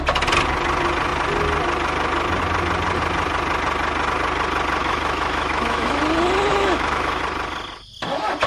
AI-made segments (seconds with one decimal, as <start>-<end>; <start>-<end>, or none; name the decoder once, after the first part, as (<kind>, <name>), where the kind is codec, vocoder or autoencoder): 4.8-6.0 (autoencoder, DAC-VAE); 6.5-7.2